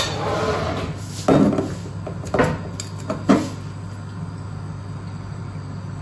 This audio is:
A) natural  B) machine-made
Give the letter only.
A